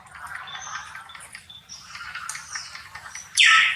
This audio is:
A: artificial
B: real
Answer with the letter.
B